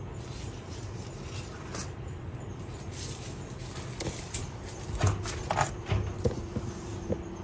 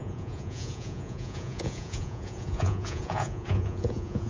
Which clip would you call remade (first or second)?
second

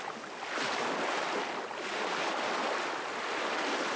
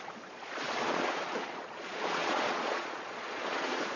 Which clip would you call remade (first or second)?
second